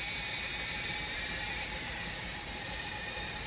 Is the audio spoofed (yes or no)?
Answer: yes